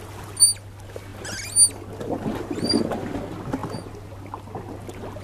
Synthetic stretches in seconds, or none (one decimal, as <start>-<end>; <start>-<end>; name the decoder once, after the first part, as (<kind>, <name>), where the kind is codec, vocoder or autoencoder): none